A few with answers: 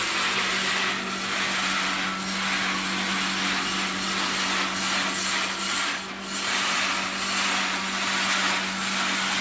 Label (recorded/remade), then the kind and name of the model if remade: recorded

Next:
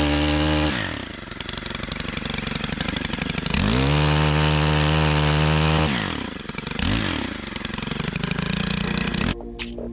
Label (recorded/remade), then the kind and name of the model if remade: recorded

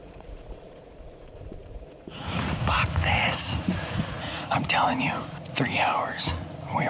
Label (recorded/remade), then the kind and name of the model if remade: remade, vocoder, Vocos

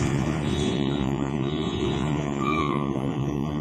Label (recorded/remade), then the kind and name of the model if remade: remade, vocoder, Vocos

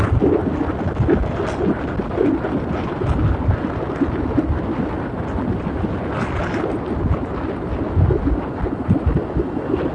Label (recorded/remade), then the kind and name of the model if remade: recorded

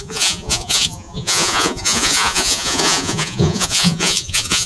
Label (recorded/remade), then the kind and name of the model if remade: remade, vocoder, Vocos